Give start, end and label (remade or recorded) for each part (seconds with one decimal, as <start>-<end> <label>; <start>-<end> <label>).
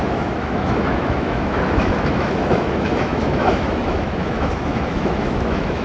0.0-5.8 remade